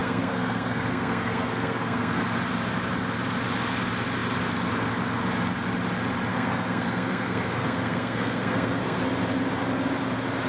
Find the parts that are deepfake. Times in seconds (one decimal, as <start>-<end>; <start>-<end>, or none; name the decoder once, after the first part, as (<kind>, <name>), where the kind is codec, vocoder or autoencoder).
0.0-2.2 (codec, SNAC); 6.3-9.0